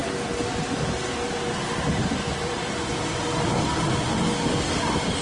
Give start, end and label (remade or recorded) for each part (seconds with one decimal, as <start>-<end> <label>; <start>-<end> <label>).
0.0-2.4 recorded; 2.4-2.9 remade; 2.9-5.2 recorded